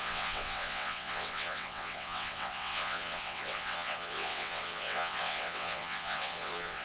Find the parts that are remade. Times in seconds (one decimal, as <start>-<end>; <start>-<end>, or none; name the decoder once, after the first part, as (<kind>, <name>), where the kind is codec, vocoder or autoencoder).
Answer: 0.0-6.8 (vocoder, WaveNeXt)